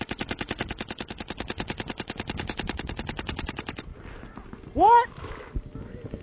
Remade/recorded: recorded